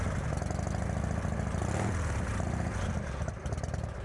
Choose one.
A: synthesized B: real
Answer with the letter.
B